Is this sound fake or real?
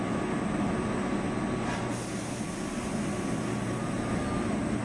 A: real